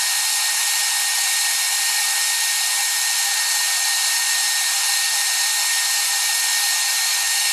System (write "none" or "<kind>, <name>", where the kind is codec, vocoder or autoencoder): none